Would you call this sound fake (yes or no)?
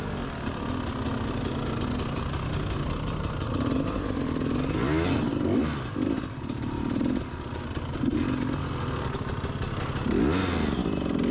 no